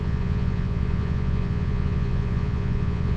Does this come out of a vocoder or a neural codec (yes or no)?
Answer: yes